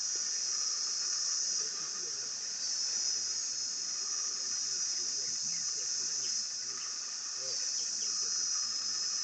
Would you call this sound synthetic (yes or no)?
yes